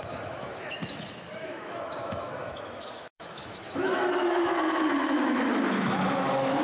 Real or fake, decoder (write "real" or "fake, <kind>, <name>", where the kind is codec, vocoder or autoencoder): fake, autoencoder, DAC-VAE